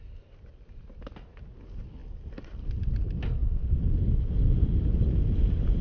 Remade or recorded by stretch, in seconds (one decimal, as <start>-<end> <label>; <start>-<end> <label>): 0.0-2.0 recorded; 2.0-2.7 remade; 2.7-3.4 recorded; 3.4-5.1 remade; 5.1-5.8 recorded